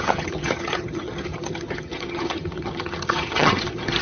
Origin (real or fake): fake